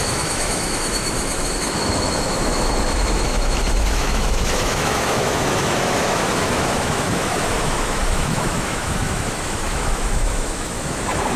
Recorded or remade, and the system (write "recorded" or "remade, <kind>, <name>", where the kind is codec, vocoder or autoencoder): remade, autoencoder, DAC-VAE